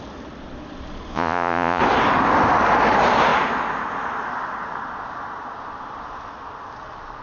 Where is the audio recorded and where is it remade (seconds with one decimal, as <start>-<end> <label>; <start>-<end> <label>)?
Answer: 0.0-1.1 recorded; 1.1-1.8 remade; 1.8-7.2 recorded